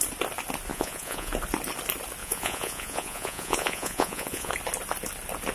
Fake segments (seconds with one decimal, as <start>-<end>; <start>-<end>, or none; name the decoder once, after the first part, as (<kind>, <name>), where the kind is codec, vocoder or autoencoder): 0.7-1.3 (vocoder, Vocos); 2.2-4.5